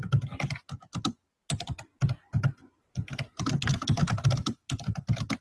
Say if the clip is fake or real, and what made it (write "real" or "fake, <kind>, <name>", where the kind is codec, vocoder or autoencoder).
real